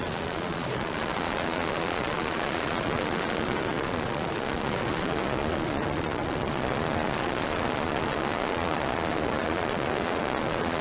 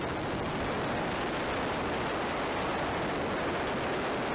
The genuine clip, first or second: second